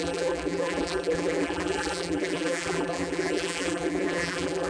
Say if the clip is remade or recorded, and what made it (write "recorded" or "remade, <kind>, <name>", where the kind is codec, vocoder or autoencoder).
remade, vocoder, BigVGAN v2